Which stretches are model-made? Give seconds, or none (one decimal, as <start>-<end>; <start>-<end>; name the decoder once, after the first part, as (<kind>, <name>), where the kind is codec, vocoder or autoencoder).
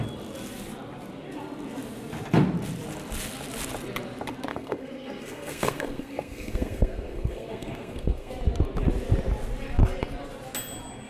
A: 4.5-8.3 (codec, SNAC)